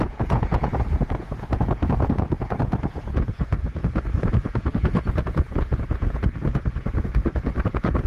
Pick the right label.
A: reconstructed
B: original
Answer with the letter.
A